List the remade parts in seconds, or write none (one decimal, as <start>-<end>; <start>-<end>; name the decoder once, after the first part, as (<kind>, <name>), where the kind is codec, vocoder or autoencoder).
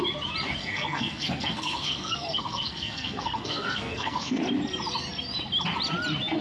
0.6-4.4 (codec, SNAC)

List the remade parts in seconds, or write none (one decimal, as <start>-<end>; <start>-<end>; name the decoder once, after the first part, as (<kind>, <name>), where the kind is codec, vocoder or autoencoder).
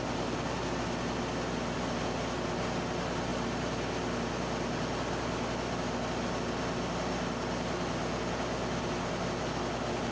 none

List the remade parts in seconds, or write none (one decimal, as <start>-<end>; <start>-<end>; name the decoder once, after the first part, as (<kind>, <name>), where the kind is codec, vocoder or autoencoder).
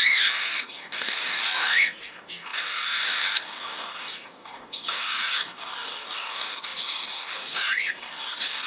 0.0-8.7 (codec, DAC)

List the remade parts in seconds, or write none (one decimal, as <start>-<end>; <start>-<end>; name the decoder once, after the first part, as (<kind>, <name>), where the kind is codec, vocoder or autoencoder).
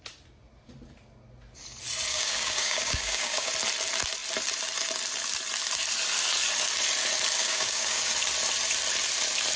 2.1-3.5 (codec, DAC); 7.4-8.1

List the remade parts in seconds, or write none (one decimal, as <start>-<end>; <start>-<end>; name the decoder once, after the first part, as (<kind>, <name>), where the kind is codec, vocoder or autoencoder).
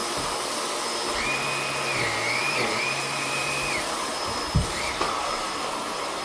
0.0-0.5 (vocoder, BigVGAN v2); 2.4-3.8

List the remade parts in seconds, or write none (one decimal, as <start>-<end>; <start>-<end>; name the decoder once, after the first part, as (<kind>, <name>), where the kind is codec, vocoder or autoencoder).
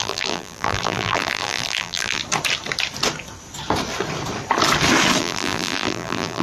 0.0-2.2 (vocoder, BigVGAN v2); 5.2-6.4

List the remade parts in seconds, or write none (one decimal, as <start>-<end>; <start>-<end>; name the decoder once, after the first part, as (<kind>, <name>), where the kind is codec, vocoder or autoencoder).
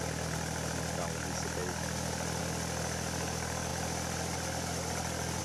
none